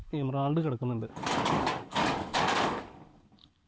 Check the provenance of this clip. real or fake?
fake